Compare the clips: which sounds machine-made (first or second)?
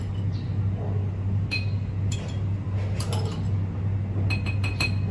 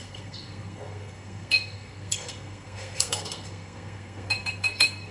second